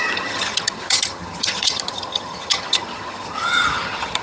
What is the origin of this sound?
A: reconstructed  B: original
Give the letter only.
A